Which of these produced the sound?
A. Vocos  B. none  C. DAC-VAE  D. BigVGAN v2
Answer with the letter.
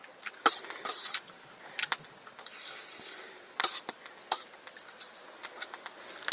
B